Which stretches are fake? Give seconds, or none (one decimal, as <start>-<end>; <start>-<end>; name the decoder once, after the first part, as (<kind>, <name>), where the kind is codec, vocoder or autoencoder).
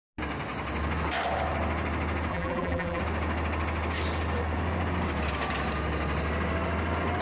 2.3-3.0 (vocoder, BigVGAN v2)